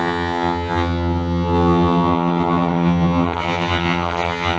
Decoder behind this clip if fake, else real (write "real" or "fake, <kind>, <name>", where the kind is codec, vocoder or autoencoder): fake, vocoder, HiFi-GAN